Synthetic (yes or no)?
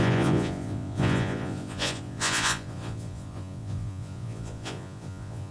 yes